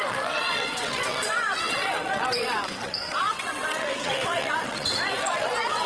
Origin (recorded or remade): remade